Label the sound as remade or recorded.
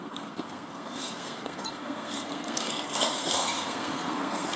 remade